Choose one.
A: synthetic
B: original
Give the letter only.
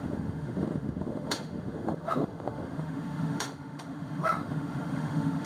A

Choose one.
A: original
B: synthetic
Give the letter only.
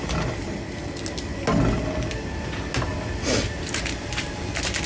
A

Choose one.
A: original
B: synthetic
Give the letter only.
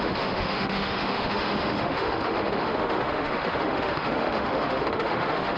B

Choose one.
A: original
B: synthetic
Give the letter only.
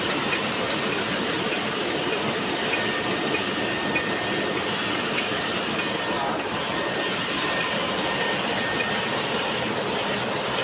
A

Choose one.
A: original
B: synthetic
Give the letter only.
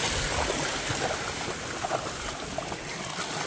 A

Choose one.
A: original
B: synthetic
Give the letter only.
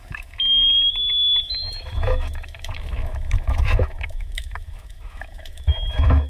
B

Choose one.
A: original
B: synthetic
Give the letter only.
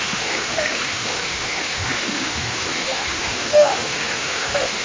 B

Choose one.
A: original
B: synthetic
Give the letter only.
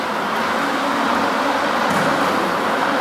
A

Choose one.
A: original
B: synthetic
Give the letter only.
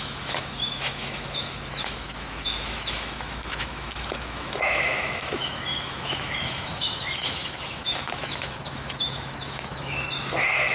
B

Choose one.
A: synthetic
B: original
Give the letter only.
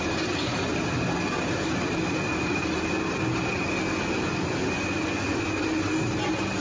B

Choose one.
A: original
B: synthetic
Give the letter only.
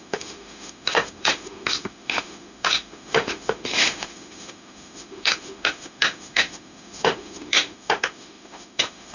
B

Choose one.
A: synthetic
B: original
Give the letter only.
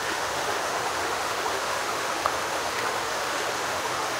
A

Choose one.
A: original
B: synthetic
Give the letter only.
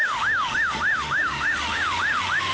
B